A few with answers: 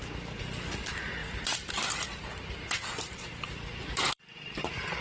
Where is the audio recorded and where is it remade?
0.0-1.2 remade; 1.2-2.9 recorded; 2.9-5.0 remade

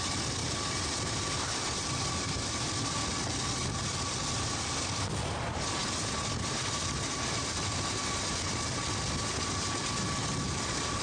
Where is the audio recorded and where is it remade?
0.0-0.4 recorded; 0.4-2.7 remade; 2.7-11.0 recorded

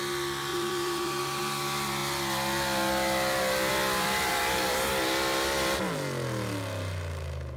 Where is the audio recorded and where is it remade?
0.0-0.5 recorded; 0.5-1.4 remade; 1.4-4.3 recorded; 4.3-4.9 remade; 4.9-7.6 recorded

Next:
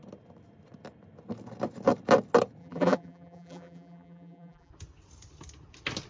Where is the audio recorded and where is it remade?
0.0-2.6 recorded; 2.6-4.7 remade; 4.7-6.1 recorded

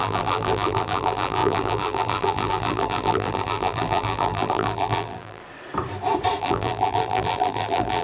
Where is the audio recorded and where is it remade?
0.0-5.4 remade; 5.4-6.4 recorded; 6.4-8.0 remade